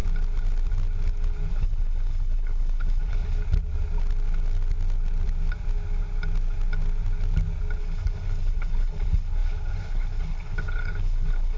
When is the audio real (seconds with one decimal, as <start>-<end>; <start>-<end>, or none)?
0.0-1.5; 3.4-7.8